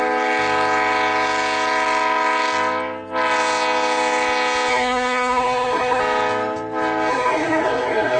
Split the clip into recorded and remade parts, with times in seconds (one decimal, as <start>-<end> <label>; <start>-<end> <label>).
0.0-4.7 recorded; 4.7-6.0 remade; 6.0-7.1 recorded; 7.1-8.2 remade